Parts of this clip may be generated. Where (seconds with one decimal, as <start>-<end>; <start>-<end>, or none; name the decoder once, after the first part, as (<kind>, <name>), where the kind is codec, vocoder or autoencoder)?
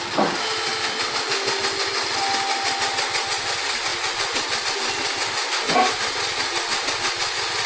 none